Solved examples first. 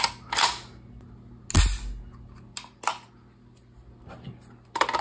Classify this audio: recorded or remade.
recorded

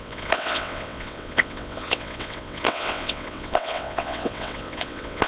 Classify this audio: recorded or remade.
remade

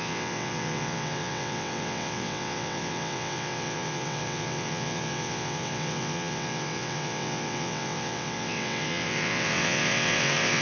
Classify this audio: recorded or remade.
remade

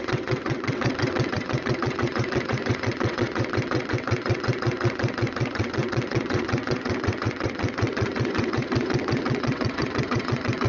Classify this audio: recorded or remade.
remade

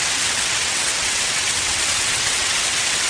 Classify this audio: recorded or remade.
remade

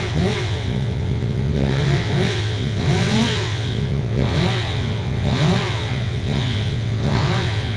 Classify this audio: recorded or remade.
remade